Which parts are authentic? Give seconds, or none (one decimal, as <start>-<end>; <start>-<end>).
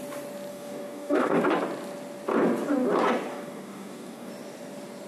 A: 0.0-0.5; 1.4-3.3; 4.3-5.1